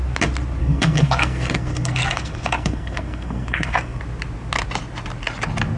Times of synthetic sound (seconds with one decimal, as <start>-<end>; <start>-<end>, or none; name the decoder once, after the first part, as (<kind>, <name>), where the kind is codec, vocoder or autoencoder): 0.6-4.0 (codec, SNAC)